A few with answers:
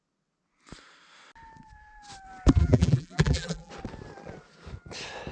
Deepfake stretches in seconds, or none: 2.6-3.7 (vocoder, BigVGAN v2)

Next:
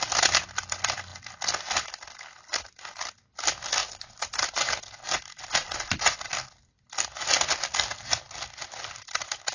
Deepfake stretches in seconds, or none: 2.5-3.1 (vocoder, BigVGAN v2); 3.8-4.5

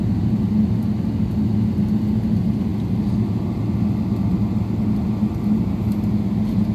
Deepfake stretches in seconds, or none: none

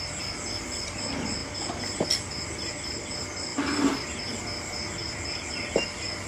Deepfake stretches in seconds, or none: 1.4-2.2 (vocoder, BigVGAN v2); 5.0-6.3

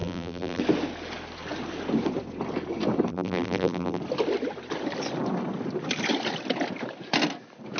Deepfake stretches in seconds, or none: 0.0-0.6 (vocoder, BigVGAN v2); 3.1-4.0

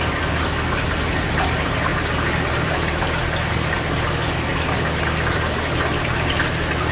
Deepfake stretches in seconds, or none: none

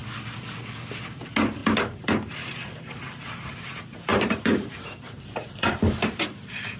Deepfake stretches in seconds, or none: 1.6-3.5 (vocoder, BigVGAN v2); 4.1-5.8